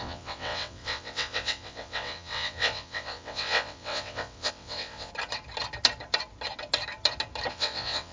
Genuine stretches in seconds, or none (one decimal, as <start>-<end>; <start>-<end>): 5.1-7.5